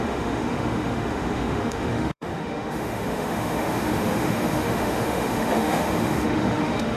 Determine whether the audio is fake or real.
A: fake